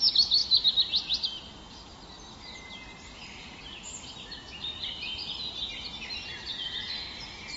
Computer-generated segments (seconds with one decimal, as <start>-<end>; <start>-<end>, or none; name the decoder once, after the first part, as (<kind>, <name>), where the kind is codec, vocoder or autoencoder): none